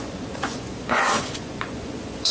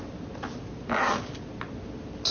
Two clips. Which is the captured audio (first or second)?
second